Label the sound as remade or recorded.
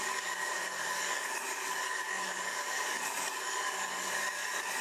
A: remade